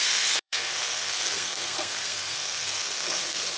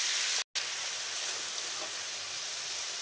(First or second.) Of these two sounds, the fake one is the first